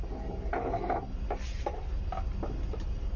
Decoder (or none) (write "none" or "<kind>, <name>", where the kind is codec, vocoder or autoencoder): none